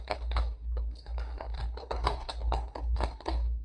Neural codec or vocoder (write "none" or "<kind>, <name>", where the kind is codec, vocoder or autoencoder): codec, SNAC